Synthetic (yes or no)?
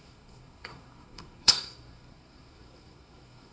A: yes